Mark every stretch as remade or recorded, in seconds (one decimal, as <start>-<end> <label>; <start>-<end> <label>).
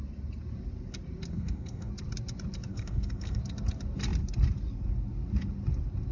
0.0-1.3 recorded; 1.3-1.9 remade; 1.9-2.7 recorded; 2.7-3.4 remade; 3.4-6.1 recorded